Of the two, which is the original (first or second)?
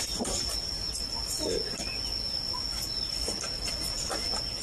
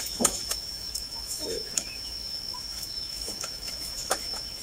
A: first